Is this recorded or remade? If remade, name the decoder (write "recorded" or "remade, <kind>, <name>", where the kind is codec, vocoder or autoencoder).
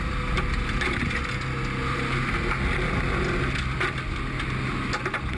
recorded